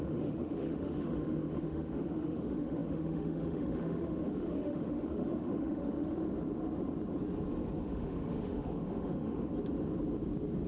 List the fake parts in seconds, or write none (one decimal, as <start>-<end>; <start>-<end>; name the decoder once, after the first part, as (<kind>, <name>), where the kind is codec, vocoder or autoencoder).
0.0-6.2 (autoencoder, DAC-VAE); 7.8-9.5